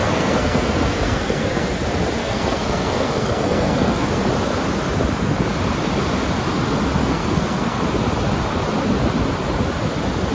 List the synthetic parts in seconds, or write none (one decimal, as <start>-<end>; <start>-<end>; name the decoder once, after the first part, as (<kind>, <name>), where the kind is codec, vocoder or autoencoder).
0.0-1.7 (codec, SNAC); 2.2-4.2; 7.0-7.8